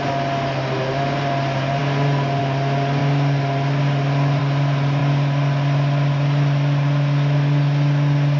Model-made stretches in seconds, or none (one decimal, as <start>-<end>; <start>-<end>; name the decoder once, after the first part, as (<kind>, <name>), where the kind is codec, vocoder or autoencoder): none